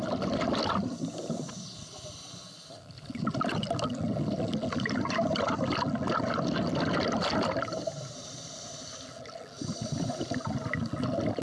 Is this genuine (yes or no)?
yes